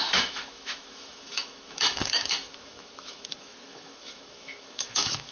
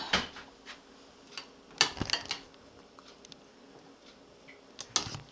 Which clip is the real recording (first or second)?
second